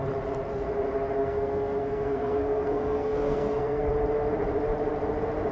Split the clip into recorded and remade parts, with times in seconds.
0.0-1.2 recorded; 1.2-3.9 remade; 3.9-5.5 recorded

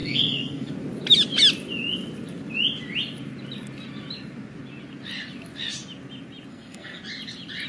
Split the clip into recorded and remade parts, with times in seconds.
0.0-0.7 remade; 0.7-6.5 recorded; 6.5-7.0 remade; 7.0-7.7 recorded

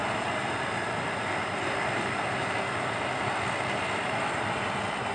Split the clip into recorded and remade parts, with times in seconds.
0.0-5.1 recorded

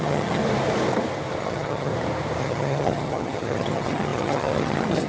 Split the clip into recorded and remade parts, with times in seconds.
0.0-0.4 remade; 0.4-1.4 recorded; 1.4-1.9 remade; 1.9-2.4 recorded; 2.4-5.1 remade

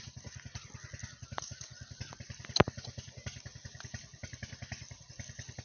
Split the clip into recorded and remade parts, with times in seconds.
0.0-5.6 recorded

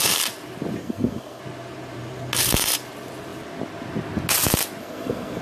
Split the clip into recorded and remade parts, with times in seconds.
0.0-0.8 recorded; 0.8-1.4 remade; 1.4-4.8 recorded; 4.8-5.4 remade

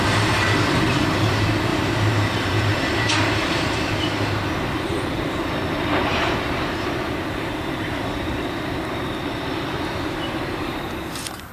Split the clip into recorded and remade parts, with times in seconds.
0.0-1.7 recorded; 1.7-3.9 remade; 3.9-6.1 recorded; 6.1-10.1 remade; 10.1-11.5 recorded